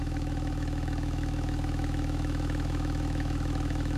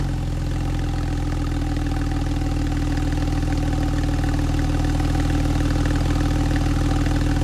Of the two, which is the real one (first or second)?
second